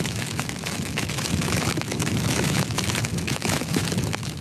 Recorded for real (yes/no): no